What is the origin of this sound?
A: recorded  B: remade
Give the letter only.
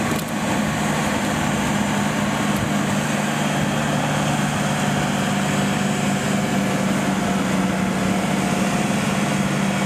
A